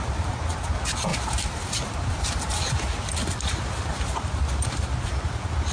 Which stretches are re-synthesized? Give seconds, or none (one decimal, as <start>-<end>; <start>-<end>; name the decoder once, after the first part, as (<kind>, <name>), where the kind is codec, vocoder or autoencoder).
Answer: 0.0-0.6 (vocoder, BigVGAN v2); 1.1-4.5